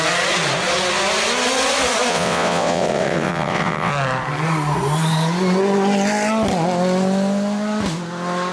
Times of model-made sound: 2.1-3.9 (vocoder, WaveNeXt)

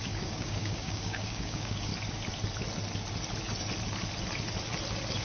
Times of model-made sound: 0.0-1.9 (codec, DAC)

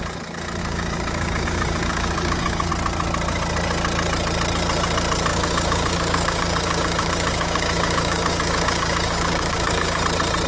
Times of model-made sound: 0.6-2.7 (codec, DAC); 5.3-10.0

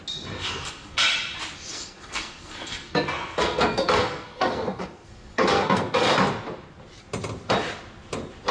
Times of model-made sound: 0.4-1.0 (codec, SNAC); 1.7-6.1